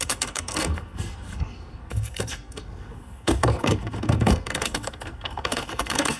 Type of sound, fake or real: fake